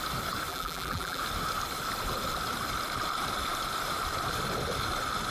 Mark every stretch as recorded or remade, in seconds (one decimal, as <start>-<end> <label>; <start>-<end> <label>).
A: 0.0-0.5 recorded; 0.5-1.2 remade; 1.2-5.3 recorded